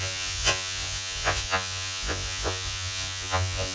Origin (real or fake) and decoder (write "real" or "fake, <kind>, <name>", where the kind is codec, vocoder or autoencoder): fake, vocoder, Vocos